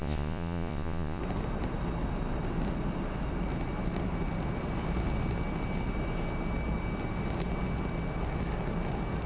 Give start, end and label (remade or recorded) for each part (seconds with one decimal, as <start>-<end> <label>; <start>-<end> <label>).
0.0-1.2 remade; 1.2-9.3 recorded